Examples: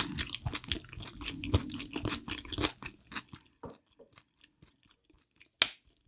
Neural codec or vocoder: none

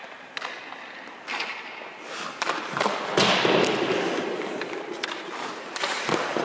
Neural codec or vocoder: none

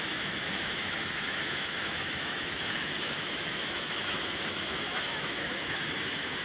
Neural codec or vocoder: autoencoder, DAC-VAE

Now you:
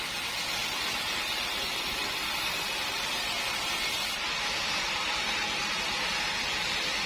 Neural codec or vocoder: none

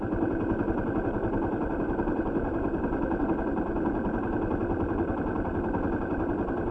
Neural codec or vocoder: none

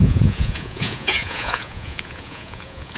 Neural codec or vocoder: vocoder, Vocos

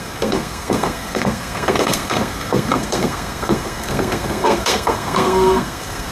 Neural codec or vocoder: codec, SNAC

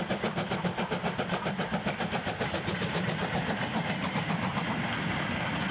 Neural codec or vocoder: none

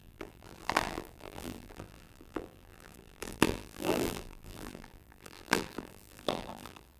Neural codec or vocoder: vocoder, BigVGAN v2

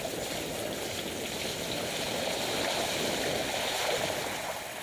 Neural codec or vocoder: none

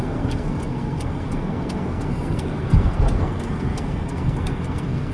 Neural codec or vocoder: codec, SNAC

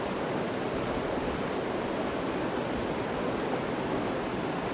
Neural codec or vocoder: none